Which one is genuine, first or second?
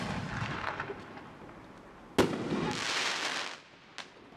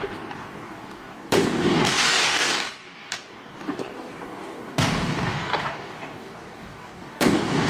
first